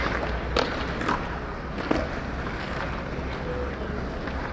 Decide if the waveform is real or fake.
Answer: real